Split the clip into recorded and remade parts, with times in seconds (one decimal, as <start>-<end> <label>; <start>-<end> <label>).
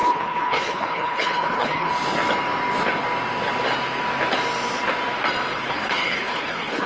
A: 0.0-1.9 remade; 1.9-5.5 recorded; 5.5-6.9 remade